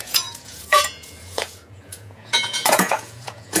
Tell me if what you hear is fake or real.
fake